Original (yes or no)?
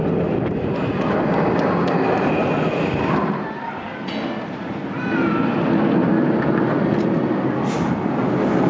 yes